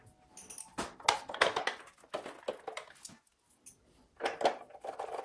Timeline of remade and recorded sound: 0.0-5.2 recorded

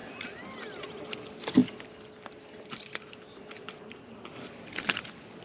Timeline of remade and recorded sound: 0.0-0.8 recorded; 0.8-1.6 remade; 1.6-4.3 recorded; 4.3-5.4 remade

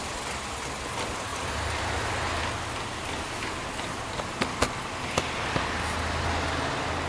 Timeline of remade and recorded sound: 0.0-1.3 recorded; 1.3-2.1 remade; 2.1-7.1 recorded

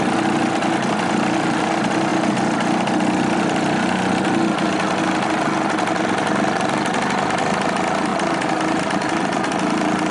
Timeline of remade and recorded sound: 0.0-8.1 recorded; 8.1-9.2 remade; 9.2-10.1 recorded

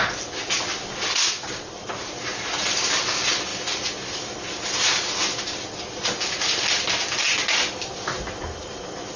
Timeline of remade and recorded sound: 0.0-9.2 recorded

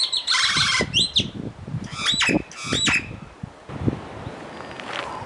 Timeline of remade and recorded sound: 0.0-1.7 remade; 1.7-5.3 recorded